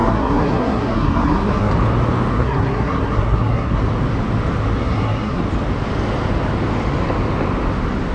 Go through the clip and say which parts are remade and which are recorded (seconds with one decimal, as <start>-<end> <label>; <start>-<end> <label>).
0.0-1.7 remade; 1.7-2.3 recorded; 2.3-3.8 remade; 3.8-4.8 recorded; 4.8-5.4 remade; 5.4-8.1 recorded